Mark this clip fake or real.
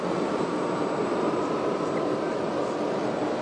real